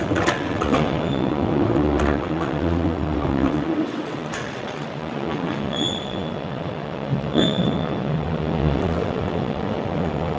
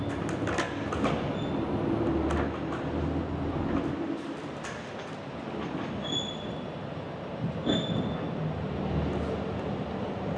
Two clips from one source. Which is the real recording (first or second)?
second